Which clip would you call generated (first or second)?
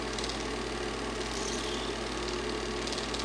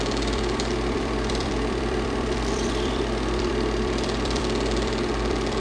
second